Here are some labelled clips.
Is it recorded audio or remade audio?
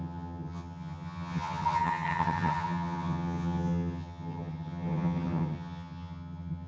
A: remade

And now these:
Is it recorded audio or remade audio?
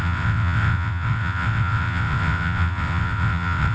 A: remade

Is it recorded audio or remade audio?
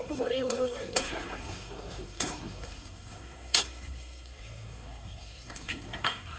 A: remade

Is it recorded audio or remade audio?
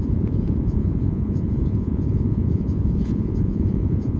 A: remade